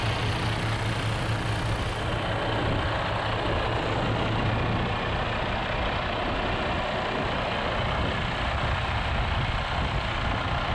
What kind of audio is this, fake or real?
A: real